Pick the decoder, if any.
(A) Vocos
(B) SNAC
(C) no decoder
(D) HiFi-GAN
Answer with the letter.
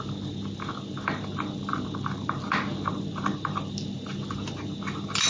C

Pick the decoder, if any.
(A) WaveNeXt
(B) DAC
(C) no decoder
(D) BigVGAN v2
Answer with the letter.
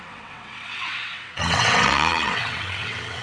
A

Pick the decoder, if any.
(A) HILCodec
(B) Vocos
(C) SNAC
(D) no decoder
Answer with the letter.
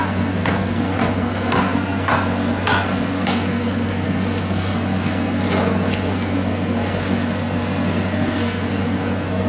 C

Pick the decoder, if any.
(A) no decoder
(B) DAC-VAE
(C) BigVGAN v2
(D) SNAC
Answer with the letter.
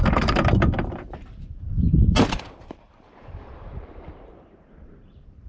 C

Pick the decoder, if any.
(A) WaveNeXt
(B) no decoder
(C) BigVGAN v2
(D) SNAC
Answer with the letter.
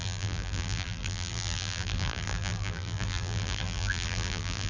C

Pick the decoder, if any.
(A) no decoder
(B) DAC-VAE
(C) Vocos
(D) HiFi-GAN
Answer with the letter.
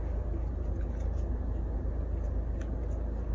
A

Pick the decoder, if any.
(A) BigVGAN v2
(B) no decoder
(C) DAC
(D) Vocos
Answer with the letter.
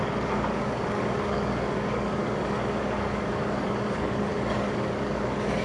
C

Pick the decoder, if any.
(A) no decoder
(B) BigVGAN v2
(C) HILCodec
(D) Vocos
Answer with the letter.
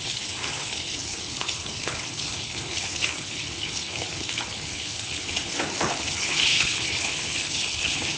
C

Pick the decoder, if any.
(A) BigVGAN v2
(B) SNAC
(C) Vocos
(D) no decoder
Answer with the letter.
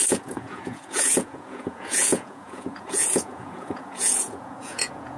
C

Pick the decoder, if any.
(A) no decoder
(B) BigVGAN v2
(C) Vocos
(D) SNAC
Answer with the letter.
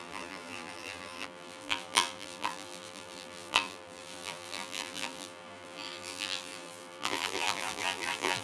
B